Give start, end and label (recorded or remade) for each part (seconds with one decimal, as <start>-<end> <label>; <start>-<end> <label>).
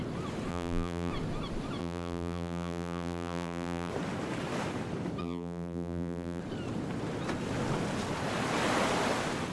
0.0-0.5 recorded; 0.5-1.1 remade; 1.1-1.8 recorded; 1.8-3.9 remade; 3.9-5.2 recorded; 5.2-6.4 remade; 6.4-9.5 recorded